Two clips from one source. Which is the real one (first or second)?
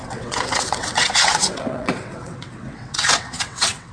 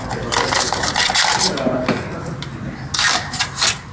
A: second